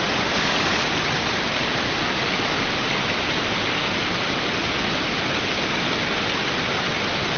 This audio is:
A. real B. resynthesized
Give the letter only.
A